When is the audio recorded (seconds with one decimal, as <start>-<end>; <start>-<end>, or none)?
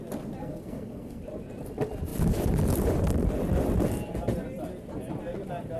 0.0-0.4; 1.2-5.8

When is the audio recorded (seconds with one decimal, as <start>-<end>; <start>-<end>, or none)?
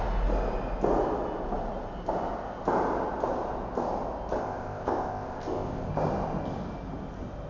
0.0-4.4; 5.9-7.5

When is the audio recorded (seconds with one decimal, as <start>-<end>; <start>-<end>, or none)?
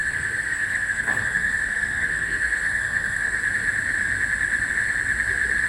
3.4-5.7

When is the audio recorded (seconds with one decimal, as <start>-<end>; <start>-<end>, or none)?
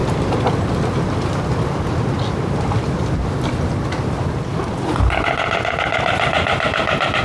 0.0-7.2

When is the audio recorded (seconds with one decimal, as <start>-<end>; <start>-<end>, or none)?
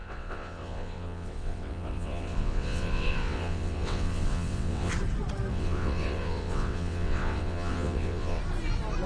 4.9-5.5; 8.4-9.1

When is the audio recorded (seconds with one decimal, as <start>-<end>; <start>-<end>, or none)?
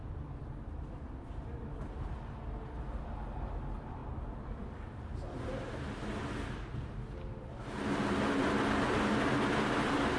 2.0-4.0; 5.1-10.2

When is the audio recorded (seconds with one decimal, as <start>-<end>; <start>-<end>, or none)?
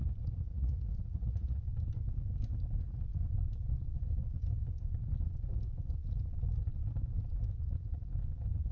0.0-0.5; 1.7-8.7